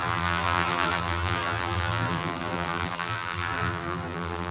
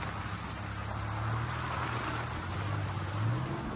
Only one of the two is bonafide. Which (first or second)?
second